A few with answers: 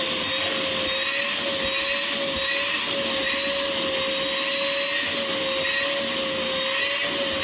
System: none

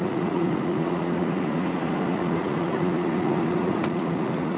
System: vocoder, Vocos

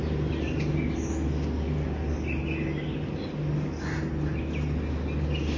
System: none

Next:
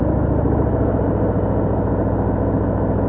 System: none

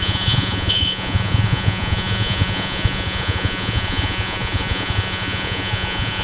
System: vocoder, Vocos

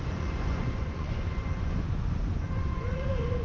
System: vocoder, Vocos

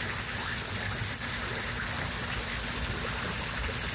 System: none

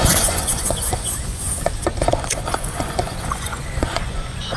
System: vocoder, Vocos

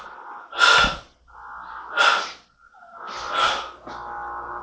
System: none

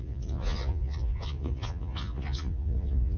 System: vocoder, Vocos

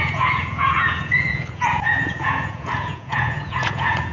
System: vocoder, Vocos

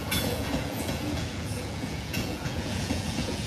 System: vocoder, Vocos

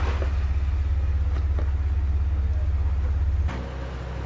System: none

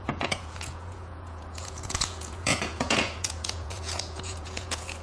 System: vocoder, Vocos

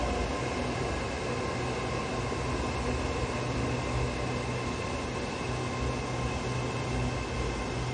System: none